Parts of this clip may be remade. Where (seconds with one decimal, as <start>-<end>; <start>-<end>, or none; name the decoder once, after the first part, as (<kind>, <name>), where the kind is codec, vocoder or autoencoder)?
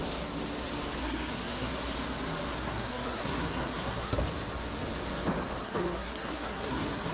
1.0-1.7 (codec, SNAC); 2.6-4.2; 5.6-7.1